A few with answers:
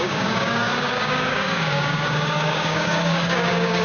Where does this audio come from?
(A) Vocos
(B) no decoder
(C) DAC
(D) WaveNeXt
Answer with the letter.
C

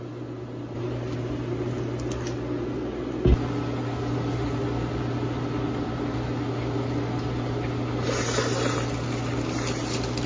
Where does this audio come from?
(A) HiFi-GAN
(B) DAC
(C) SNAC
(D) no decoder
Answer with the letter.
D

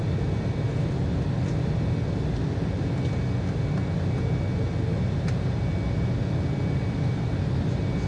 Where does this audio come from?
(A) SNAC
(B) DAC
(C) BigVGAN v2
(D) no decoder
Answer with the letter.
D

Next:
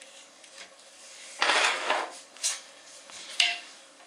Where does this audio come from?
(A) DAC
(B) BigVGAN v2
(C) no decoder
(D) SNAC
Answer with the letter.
A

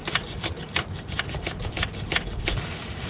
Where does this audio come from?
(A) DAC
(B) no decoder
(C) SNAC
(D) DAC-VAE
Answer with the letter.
B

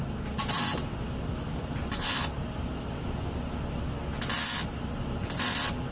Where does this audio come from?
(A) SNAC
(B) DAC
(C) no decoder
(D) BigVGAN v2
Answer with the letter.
C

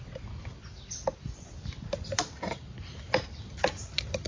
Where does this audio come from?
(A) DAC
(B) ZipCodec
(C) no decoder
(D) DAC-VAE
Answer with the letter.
C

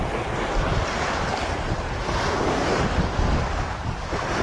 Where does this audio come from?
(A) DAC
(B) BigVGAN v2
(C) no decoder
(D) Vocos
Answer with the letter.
C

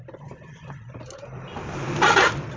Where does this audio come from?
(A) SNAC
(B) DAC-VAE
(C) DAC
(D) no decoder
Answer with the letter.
D